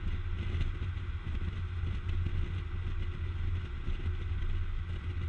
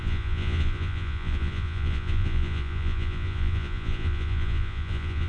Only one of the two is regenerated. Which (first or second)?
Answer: second